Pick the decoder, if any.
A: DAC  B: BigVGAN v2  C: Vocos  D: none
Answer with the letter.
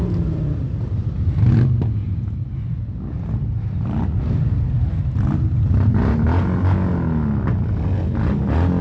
D